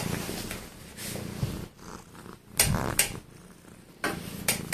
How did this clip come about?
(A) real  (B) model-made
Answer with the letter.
A